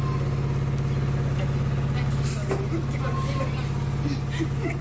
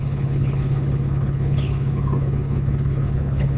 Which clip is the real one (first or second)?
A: first